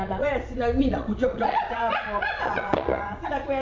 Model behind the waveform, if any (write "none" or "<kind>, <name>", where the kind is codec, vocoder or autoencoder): vocoder, Vocos